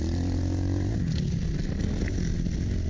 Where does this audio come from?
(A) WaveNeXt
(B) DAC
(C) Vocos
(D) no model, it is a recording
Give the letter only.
D